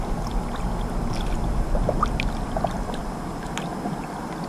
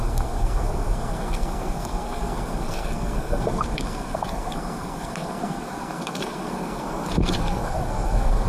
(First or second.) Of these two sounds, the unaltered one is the first